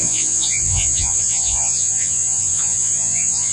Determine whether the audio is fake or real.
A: fake